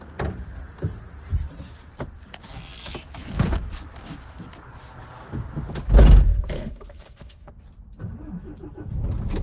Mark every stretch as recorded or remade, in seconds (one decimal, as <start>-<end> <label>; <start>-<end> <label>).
0.0-6.3 recorded; 6.3-7.5 remade; 7.5-9.4 recorded